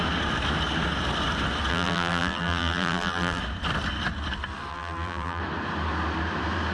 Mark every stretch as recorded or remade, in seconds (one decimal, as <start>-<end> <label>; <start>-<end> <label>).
0.0-1.7 recorded; 1.7-3.4 remade; 3.4-4.7 recorded; 4.7-5.4 remade; 5.4-6.7 recorded